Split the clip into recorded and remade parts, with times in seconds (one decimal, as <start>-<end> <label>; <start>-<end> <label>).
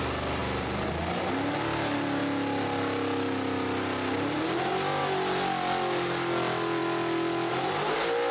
0.0-8.3 recorded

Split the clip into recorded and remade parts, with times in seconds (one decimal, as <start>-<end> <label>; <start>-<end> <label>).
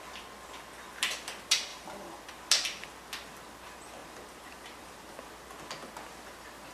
0.0-1.7 recorded; 1.7-2.2 remade; 2.2-4.0 recorded; 4.0-5.3 remade; 5.3-6.7 recorded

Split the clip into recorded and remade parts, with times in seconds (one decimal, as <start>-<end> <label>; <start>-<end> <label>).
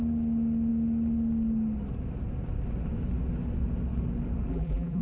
0.0-4.5 recorded; 4.5-5.0 remade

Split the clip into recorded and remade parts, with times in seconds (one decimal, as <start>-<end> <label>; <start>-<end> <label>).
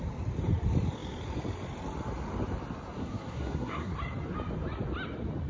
0.0-3.0 recorded; 3.0-3.9 remade; 3.9-5.5 recorded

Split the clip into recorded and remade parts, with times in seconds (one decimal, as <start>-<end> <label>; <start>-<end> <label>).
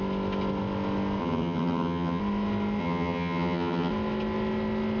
0.0-1.2 recorded; 1.2-2.2 remade; 2.2-2.8 recorded; 2.8-3.9 remade; 3.9-5.0 recorded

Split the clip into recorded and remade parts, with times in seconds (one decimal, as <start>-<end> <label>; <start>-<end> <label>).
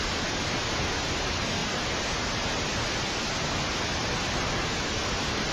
0.0-5.5 recorded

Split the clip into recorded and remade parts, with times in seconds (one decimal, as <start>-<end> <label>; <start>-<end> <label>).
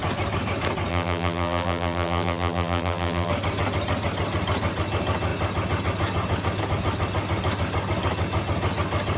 0.0-0.9 recorded; 0.9-3.3 remade; 3.3-9.2 recorded